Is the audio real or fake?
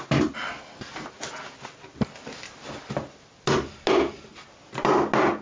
real